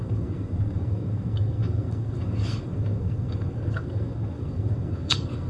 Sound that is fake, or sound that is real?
fake